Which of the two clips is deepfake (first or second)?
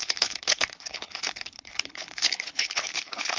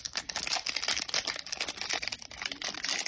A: first